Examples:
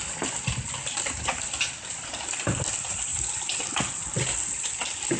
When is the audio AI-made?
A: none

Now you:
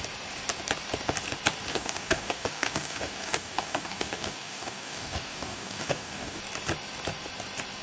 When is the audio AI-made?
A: 1.7-6.4 (codec, DAC)

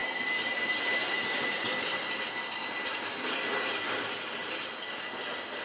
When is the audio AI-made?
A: 0.0-0.6 (vocoder, BigVGAN v2); 1.0-1.6; 2.6-3.9

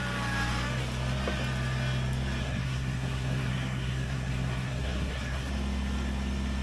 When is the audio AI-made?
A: 2.4-5.5 (codec, SNAC)

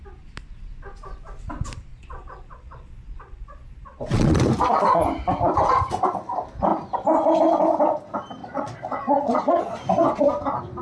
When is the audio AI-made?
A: 1.9-4.4 (vocoder, Vocos); 8.4-9.6